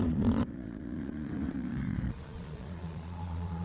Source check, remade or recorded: remade